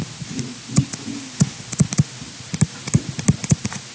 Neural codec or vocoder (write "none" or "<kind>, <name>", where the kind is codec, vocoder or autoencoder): none